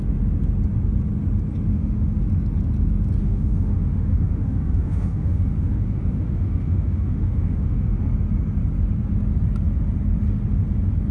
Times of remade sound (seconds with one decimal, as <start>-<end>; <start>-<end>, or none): 1.7-2.2; 3.2-8.0